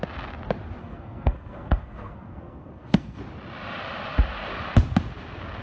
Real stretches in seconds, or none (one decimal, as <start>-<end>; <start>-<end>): 0.0-0.8; 3.2-5.6